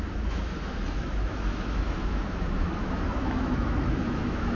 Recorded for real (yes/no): no